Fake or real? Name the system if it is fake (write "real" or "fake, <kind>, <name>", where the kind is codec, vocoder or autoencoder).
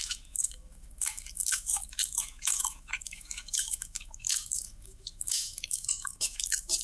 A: fake, autoencoder, DAC-VAE